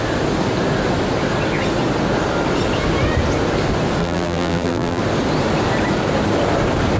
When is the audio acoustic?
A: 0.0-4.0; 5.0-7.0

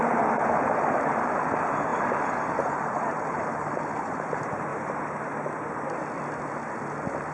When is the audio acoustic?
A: 4.7-7.3

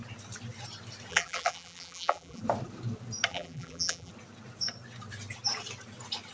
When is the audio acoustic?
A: 0.0-1.1; 2.4-3.3; 4.1-6.3

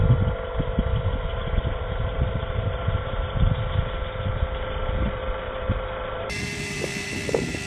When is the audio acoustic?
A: 0.0-1.3; 3.4-7.7

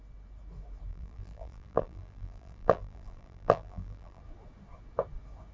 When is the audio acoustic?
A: 0.0-0.9; 4.2-5.5

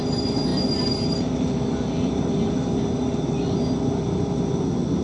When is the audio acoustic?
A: 0.0-0.5; 2.4-5.0

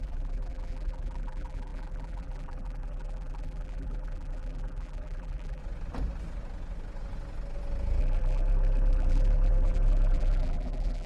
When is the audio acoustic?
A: 5.6-8.0